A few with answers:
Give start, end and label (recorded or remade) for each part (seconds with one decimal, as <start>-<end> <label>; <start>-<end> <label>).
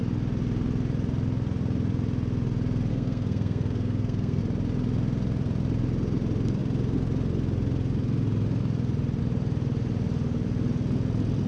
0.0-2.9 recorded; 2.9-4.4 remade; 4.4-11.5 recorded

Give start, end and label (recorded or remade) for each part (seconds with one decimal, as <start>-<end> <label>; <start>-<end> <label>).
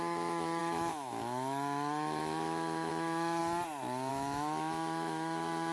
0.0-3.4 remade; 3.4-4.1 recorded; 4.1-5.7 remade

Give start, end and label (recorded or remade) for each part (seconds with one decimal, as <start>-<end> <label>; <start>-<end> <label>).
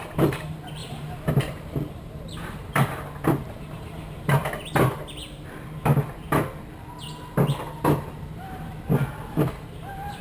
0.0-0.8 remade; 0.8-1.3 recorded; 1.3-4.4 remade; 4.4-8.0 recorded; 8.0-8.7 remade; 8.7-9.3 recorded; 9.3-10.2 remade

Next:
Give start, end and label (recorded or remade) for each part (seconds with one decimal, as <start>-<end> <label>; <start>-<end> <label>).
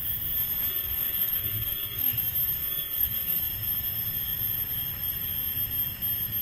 0.0-0.7 recorded; 0.7-2.2 remade; 2.2-2.6 recorded; 2.6-3.4 remade; 3.4-6.4 recorded